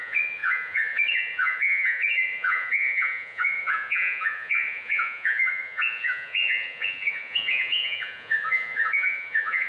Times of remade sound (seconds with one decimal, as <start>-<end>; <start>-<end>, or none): 0.0-9.7